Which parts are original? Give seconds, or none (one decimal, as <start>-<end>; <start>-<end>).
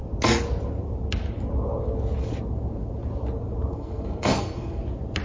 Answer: 0.0-3.7; 4.8-5.2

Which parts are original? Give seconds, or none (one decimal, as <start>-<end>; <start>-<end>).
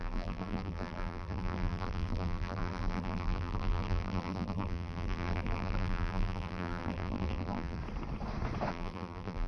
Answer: 7.8-8.7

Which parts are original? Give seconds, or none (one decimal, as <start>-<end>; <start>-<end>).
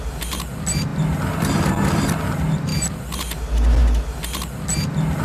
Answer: 0.0-5.2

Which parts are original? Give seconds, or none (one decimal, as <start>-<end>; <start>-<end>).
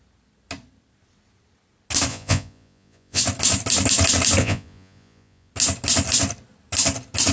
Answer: 0.0-2.1; 3.2-4.4; 5.5-7.3